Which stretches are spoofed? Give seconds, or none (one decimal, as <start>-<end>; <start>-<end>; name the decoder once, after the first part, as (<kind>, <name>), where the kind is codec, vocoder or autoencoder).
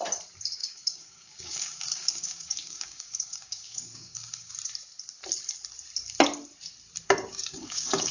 0.6-4.5 (codec, DAC); 7.3-8.1